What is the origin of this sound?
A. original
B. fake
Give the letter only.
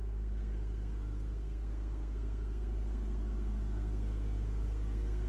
B